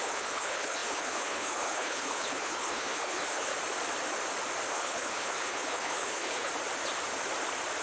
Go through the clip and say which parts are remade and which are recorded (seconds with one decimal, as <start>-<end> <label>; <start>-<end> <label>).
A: 0.0-3.5 remade; 3.5-4.7 recorded; 4.7-6.5 remade; 6.5-7.8 recorded